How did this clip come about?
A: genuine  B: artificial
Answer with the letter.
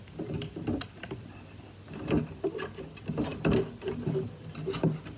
A